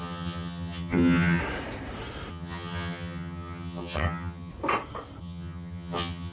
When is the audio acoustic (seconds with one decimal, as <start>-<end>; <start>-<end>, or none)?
1.4-2.3; 4.5-5.2